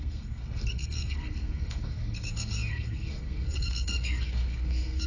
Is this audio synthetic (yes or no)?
yes